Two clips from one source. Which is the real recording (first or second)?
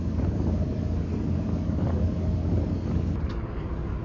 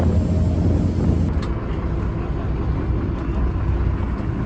second